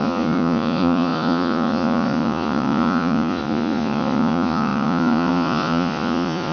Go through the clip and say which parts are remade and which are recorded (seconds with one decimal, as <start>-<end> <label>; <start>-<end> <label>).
0.0-6.5 remade